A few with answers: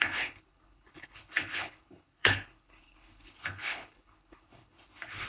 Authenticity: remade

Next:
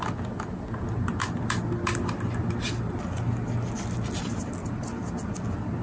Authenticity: recorded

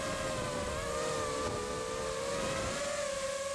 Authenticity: recorded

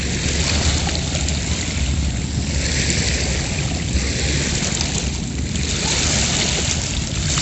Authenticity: recorded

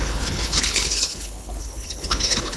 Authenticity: remade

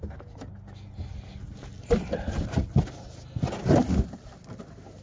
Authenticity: recorded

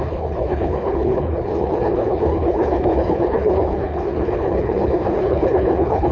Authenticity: remade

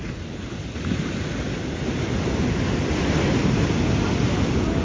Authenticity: recorded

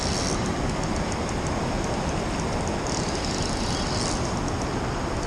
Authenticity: recorded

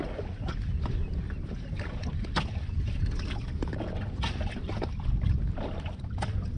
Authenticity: recorded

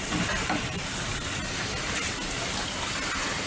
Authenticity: recorded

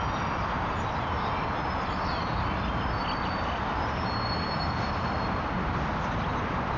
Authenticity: recorded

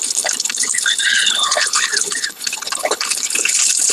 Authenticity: remade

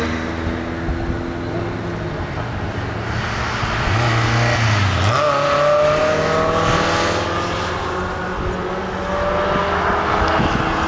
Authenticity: recorded